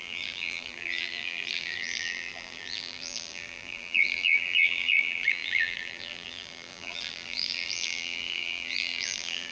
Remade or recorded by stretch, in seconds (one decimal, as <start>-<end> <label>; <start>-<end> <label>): 0.0-9.5 remade

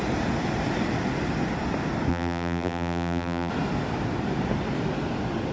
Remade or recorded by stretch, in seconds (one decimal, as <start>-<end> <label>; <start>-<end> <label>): 0.0-2.1 recorded; 2.1-3.5 remade; 3.5-5.5 recorded

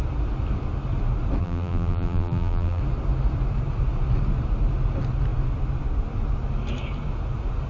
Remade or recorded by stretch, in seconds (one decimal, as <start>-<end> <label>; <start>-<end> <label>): 0.0-1.4 recorded; 1.4-2.8 remade; 2.8-7.7 recorded

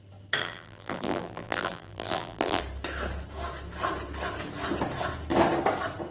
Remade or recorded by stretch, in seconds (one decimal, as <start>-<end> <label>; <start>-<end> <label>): 0.0-0.4 recorded; 0.4-2.6 remade; 2.6-6.1 recorded

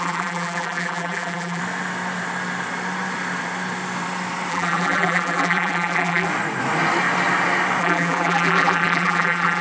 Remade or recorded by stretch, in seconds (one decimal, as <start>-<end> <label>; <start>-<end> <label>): 0.0-1.6 remade; 1.6-4.5 recorded; 4.5-6.3 remade; 6.3-7.8 recorded; 7.8-9.6 remade